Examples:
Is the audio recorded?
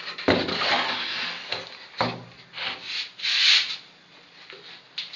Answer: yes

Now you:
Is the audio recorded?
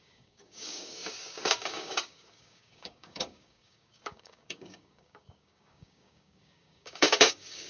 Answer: no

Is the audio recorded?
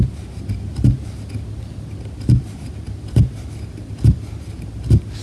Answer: yes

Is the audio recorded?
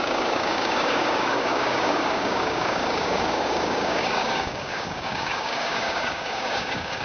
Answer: no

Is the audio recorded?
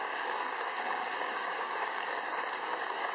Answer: no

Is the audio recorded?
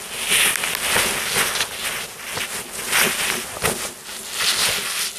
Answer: yes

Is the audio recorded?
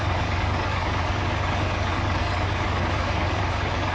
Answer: no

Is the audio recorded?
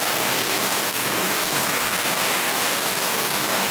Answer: no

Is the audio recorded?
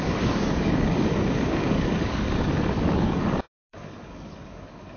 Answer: no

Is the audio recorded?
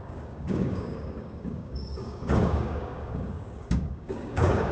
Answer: no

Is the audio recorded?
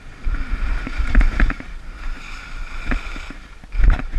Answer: yes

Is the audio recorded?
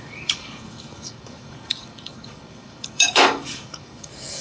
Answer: no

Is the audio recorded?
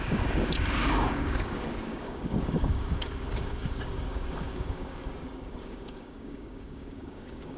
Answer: no